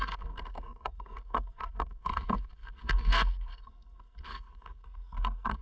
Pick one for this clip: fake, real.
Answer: fake